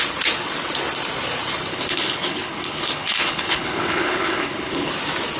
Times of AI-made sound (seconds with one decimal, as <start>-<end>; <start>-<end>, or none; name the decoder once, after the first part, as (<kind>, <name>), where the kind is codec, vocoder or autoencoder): 1.7-4.9 (codec, HILCodec)